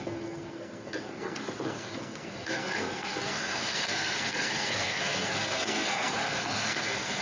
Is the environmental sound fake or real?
fake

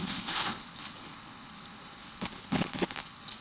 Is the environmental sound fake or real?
fake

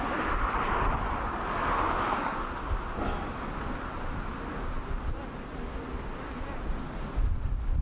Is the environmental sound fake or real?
real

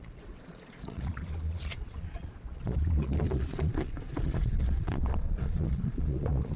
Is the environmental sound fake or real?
fake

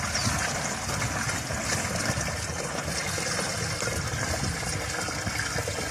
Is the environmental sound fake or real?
real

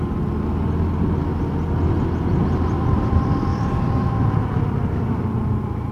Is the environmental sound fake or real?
real